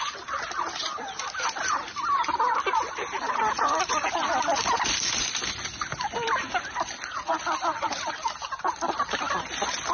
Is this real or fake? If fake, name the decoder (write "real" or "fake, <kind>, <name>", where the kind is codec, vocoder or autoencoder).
fake, vocoder, BigVGAN v2